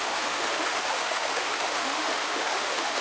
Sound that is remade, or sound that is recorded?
remade